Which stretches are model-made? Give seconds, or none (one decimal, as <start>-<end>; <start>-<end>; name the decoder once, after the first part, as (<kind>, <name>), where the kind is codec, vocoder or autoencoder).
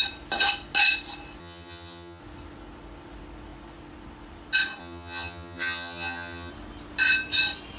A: 1.4-2.2 (vocoder, HiFi-GAN); 4.8-6.5